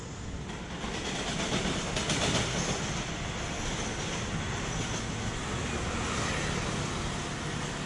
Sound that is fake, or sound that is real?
real